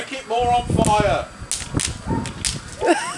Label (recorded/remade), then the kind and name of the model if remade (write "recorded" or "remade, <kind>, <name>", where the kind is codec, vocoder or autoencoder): recorded